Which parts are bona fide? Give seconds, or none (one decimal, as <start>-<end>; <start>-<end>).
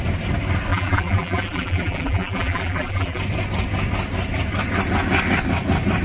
0.0-0.7; 3.2-6.0